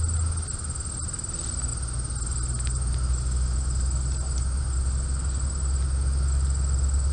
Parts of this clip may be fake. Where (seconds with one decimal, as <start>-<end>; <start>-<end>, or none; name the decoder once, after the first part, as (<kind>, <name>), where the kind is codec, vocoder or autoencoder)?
none